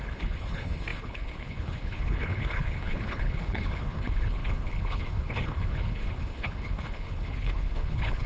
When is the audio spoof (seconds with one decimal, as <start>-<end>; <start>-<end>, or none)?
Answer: 0.0-8.3